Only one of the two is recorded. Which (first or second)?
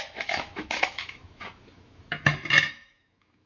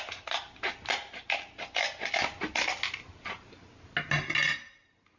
second